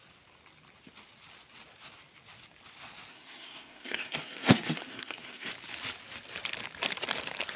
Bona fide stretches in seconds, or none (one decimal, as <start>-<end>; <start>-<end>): 0.0-3.1; 5.5-7.6